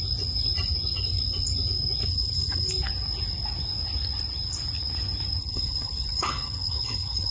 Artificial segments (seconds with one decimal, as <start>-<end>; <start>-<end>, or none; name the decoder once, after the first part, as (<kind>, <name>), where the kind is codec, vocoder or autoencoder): 2.1-2.7 (codec, HILCodec); 5.4-7.3